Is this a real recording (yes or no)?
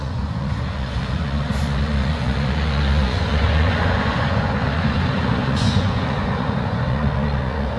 no